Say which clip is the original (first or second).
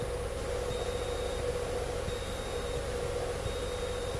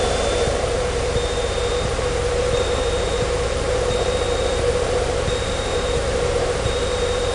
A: first